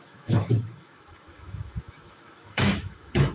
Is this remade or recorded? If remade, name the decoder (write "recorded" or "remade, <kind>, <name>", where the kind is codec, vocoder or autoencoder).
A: remade, autoencoder, DAC-VAE